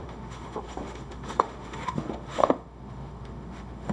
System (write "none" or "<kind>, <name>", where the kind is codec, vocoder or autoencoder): autoencoder, DAC-VAE